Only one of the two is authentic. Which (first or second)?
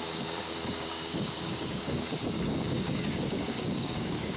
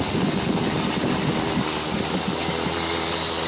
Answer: second